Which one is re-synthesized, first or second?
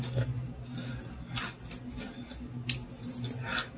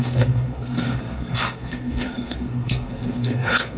second